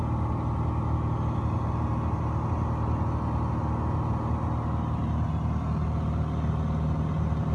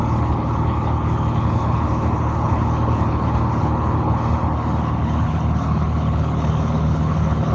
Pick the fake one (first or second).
second